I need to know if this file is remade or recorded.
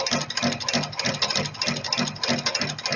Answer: recorded